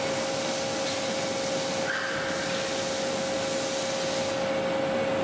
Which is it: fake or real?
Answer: real